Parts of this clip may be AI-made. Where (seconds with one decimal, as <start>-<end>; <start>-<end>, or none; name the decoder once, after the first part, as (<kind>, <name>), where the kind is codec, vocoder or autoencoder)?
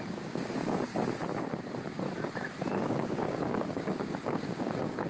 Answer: 0.0-0.9 (codec, DAC); 2.7-5.1